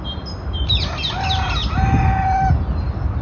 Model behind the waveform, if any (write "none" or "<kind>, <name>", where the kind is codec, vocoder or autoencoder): none